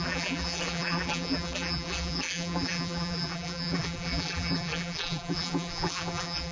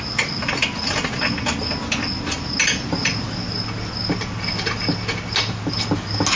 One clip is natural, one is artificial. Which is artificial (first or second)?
first